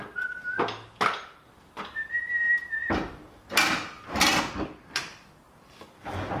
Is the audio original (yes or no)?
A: yes